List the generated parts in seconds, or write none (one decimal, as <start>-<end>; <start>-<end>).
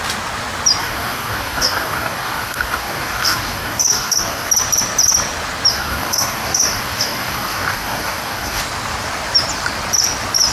0.8-4.5; 5.7-8.6